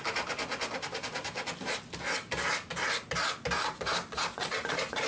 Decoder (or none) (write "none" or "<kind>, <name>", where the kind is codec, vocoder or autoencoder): none